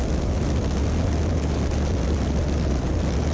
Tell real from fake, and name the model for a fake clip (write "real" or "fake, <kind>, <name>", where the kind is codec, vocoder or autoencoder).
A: real